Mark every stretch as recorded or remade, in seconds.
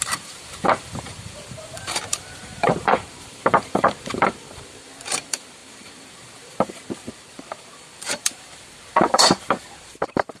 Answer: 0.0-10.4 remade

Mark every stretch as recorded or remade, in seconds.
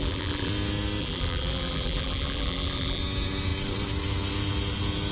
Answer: 0.0-0.5 remade; 0.5-1.0 recorded; 1.0-3.0 remade; 3.0-5.1 recorded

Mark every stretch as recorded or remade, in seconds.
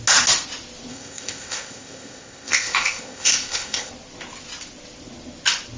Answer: 0.0-0.9 recorded; 0.9-3.9 remade; 3.9-5.8 recorded